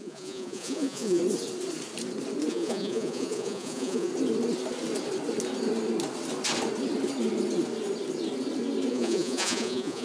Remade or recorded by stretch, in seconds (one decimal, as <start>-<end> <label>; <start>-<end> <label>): 0.0-1.2 remade; 1.2-2.5 recorded; 2.5-4.1 remade; 4.1-8.9 recorded; 8.9-10.0 remade